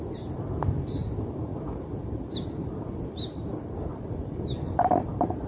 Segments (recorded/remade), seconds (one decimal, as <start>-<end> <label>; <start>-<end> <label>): 0.0-5.5 remade